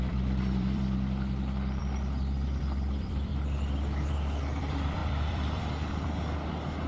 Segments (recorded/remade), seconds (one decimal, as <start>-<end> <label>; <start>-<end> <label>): 0.0-3.3 remade; 3.3-4.1 recorded; 4.1-6.9 remade

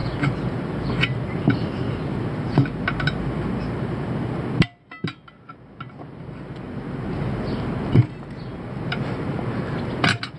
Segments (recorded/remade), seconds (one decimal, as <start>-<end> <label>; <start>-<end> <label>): 0.0-10.4 recorded